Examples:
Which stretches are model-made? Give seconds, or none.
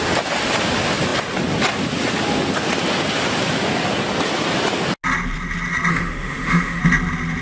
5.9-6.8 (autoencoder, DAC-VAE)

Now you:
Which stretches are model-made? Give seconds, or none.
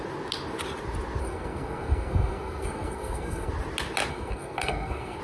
1.2-3.5 (codec, SNAC); 4.1-5.2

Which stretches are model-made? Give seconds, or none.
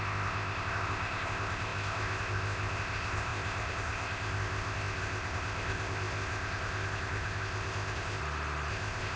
0.0-8.2 (codec, ZipCodec); 8.7-9.2